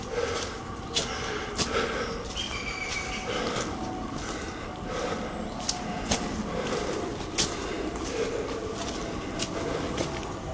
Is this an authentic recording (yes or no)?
yes